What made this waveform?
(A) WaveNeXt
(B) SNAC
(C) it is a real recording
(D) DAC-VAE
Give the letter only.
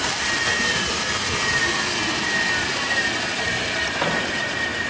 C